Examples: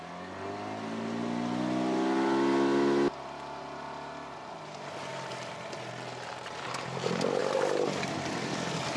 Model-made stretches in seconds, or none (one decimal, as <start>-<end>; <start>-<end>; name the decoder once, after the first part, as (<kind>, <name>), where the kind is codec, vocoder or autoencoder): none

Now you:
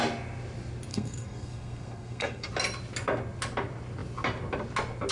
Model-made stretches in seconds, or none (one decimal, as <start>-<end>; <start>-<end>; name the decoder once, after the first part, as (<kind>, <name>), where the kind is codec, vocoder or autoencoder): 0.9-2.5 (codec, SNAC)

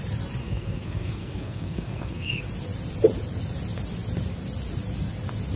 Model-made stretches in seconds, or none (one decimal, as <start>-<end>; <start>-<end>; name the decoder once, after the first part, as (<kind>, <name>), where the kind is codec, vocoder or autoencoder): 0.4-2.4 (codec, SNAC)